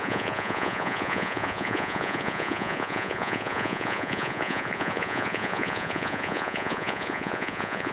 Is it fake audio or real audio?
fake